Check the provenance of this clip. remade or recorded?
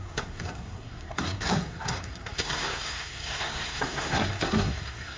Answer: remade